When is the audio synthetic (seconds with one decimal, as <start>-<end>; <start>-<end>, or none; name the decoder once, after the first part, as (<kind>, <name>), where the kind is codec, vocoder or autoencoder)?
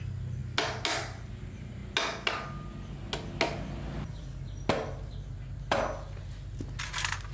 none